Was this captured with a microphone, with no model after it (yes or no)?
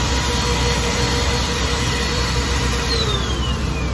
no